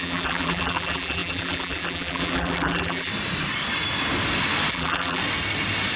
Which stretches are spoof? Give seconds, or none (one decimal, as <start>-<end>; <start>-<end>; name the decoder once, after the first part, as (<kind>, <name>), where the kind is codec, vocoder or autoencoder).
0.0-3.1 (vocoder, BigVGAN v2); 4.7-5.2